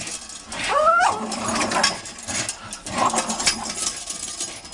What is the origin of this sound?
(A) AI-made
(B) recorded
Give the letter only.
B